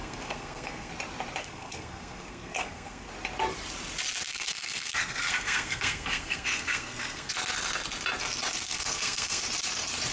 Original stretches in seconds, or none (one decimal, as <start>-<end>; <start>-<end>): 0.9-1.4; 3.1-4.3; 7.3-8.7; 9.4-10.1